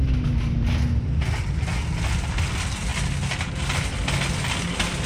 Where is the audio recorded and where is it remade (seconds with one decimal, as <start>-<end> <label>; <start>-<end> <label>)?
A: 0.0-5.1 recorded